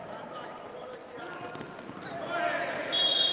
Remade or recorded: remade